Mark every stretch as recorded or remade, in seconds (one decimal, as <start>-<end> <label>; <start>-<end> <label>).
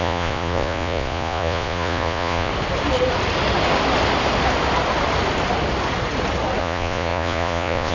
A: 0.0-2.5 remade; 2.5-6.6 recorded; 6.6-7.9 remade